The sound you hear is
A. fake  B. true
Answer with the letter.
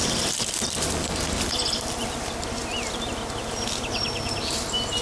B